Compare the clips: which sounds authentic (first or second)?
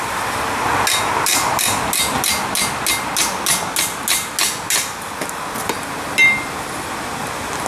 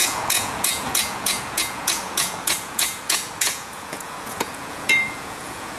first